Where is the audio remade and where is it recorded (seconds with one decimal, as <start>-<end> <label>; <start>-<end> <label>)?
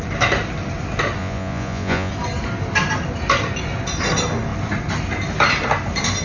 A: 0.0-1.2 recorded; 1.2-2.1 remade; 2.1-6.2 recorded